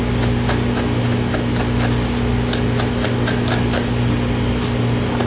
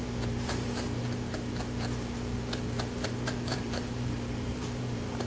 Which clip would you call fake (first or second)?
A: second